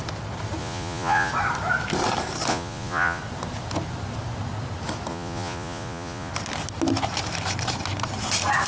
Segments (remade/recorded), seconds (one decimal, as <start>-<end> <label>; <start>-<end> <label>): 0.0-0.6 recorded; 0.6-1.3 remade; 1.3-2.5 recorded; 2.5-3.2 remade; 3.2-5.1 recorded; 5.1-6.3 remade; 6.3-8.7 recorded